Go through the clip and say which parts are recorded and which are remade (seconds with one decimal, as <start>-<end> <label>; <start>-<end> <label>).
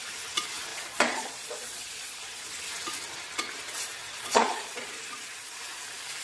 0.0-0.7 recorded; 0.7-2.4 remade; 2.4-4.0 recorded; 4.0-4.9 remade; 4.9-6.2 recorded